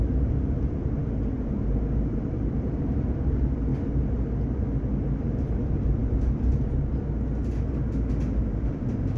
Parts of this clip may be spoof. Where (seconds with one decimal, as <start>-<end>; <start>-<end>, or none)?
0.0-3.7; 5.2-6.0; 8.4-9.2